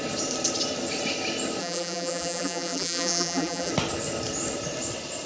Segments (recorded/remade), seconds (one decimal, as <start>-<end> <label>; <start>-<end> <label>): 0.0-1.6 recorded; 1.6-3.7 remade; 3.7-5.3 recorded